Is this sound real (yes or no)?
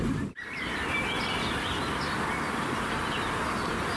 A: yes